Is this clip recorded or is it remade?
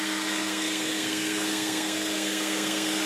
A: remade